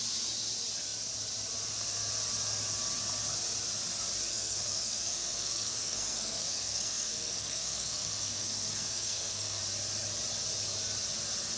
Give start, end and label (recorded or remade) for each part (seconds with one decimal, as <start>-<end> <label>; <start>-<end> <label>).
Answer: 0.0-4.3 recorded; 4.3-9.6 remade; 9.6-11.6 recorded